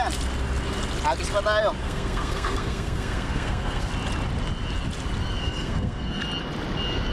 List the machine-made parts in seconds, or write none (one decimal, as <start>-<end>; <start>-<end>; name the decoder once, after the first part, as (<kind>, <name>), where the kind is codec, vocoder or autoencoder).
1.8-3.9 (codec, SNAC); 5.4-6.2